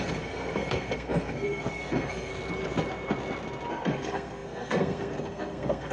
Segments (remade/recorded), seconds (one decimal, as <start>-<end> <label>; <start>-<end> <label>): 0.0-2.3 remade; 2.3-3.7 recorded; 3.7-5.9 remade